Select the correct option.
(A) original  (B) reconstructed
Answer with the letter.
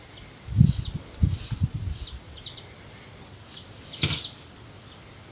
A